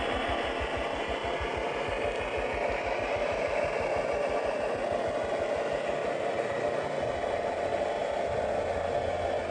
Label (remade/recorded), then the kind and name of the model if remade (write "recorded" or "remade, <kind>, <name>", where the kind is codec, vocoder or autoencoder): recorded